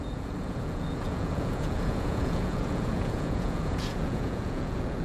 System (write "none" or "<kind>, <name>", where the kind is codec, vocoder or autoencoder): vocoder, Vocos